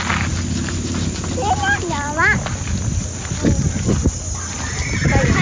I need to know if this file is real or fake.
real